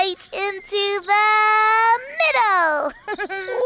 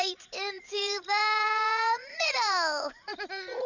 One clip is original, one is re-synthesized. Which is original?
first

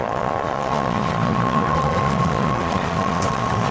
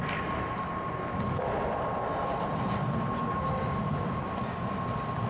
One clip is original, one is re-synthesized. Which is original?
second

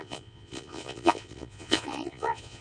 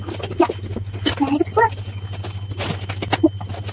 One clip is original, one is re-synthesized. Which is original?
second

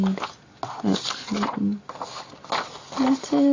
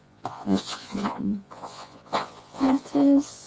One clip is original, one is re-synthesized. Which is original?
first